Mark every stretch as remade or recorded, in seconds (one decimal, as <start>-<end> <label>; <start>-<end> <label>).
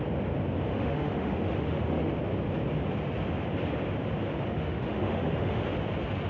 0.0-0.7 recorded; 0.7-2.1 remade; 2.1-4.5 recorded; 4.5-5.6 remade; 5.6-6.3 recorded